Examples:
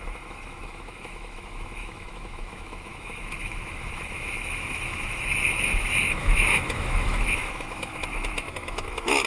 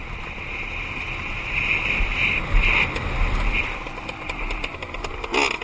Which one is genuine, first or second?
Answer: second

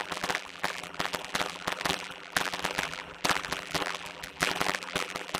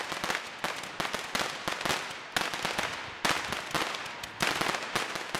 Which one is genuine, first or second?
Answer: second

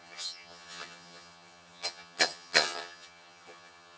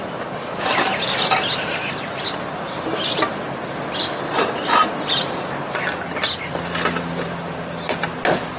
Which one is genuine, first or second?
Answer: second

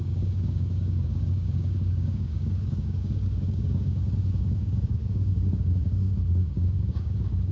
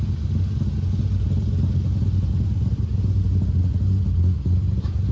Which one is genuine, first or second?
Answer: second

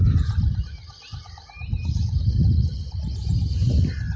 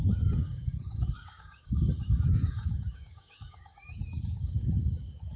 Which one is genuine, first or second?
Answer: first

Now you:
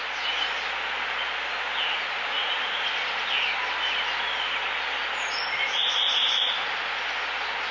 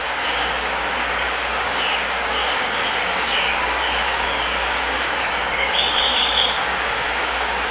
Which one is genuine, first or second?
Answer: first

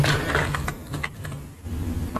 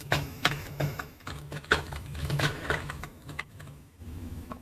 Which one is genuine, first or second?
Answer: first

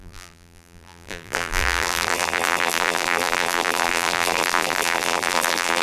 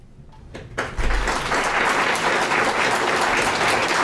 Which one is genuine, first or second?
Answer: second